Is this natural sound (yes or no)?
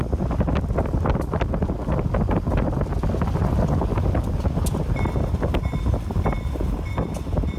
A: yes